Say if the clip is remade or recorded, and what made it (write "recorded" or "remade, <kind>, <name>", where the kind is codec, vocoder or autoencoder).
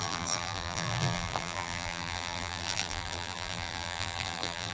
remade, vocoder, BigVGAN v2